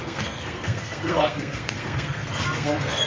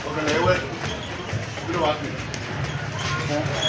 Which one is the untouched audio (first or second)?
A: second